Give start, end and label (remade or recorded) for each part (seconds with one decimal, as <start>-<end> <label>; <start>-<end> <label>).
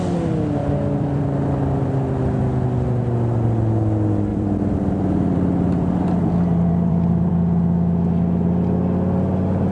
0.0-0.6 recorded; 0.6-1.2 remade; 1.2-4.3 recorded; 4.3-7.3 remade; 7.3-9.7 recorded